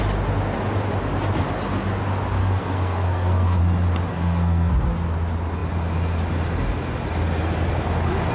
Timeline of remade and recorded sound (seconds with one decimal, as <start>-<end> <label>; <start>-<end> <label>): 0.0-2.4 recorded; 2.4-3.6 remade; 3.6-4.1 recorded; 4.1-4.7 remade; 4.7-8.3 recorded

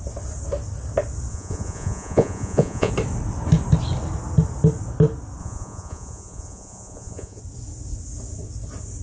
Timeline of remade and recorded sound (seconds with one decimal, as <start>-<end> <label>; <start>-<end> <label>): 0.0-1.3 recorded; 1.3-2.9 remade; 2.9-5.4 recorded; 5.4-7.4 remade; 7.4-9.0 recorded

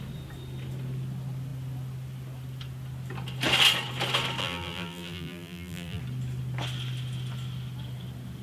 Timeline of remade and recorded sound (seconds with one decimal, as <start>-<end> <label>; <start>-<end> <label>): 0.0-4.4 recorded; 4.4-6.0 remade; 6.0-8.4 recorded

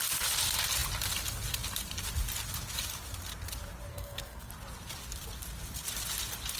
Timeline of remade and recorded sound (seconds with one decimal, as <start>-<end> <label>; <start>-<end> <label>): 0.0-3.9 recorded; 3.9-4.5 remade; 4.5-6.6 recorded

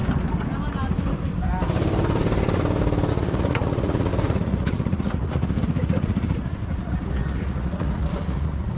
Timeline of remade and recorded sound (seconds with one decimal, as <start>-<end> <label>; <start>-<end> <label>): 0.0-3.1 recorded; 3.1-8.8 remade

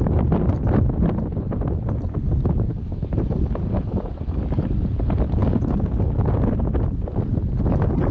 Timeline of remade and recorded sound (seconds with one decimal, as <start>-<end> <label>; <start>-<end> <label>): 0.0-2.7 recorded; 2.7-4.6 remade; 4.6-5.4 recorded; 5.4-6.2 remade; 6.2-8.1 recorded